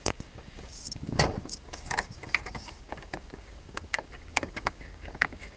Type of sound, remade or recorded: remade